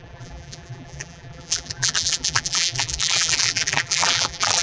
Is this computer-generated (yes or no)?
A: yes